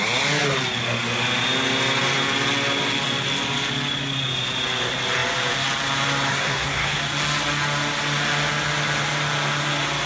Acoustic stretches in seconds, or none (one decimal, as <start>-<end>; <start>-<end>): 0.0-6.3; 7.0-10.1